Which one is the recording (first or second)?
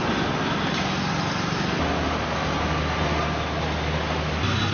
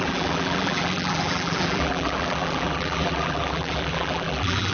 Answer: first